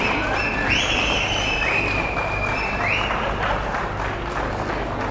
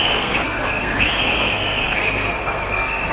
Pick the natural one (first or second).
first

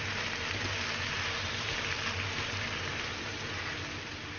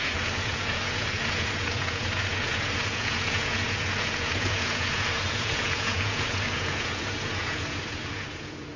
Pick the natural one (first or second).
first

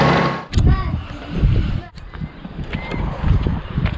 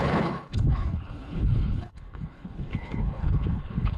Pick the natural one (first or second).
first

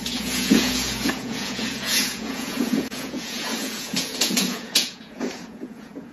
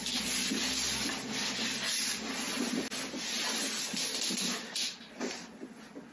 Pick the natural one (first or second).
second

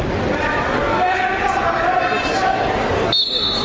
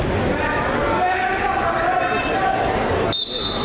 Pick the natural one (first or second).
second